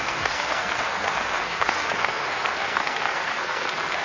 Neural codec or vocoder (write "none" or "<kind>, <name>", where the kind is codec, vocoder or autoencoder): codec, SNAC